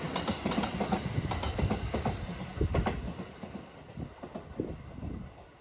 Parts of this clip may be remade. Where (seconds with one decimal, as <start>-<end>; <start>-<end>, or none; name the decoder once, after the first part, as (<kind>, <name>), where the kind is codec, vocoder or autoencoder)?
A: none